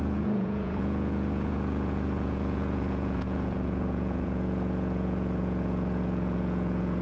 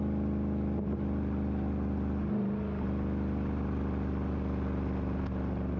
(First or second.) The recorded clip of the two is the second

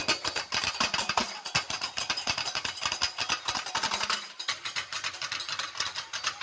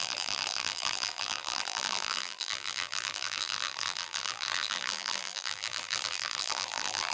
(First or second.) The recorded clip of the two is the first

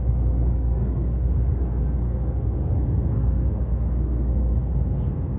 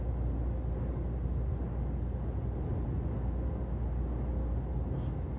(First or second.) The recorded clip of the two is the second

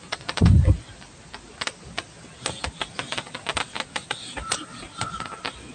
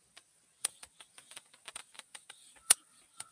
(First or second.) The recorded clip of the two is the first